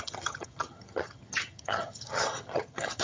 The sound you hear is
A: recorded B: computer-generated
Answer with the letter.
B